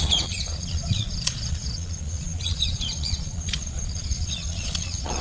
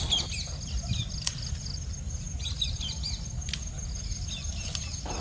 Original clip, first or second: second